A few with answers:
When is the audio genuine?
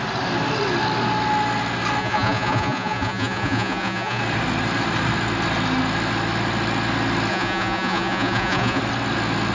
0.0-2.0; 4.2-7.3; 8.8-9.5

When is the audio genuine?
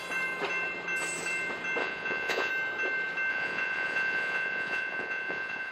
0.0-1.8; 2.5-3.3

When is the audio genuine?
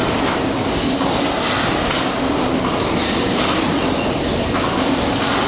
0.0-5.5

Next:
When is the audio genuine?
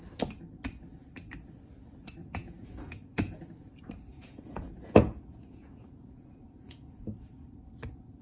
0.0-2.2; 3.4-4.1; 7.3-8.2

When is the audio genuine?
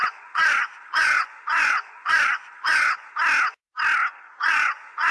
3.1-4.1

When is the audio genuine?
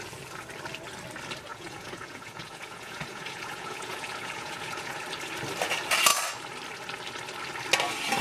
0.0-1.5; 5.0-8.2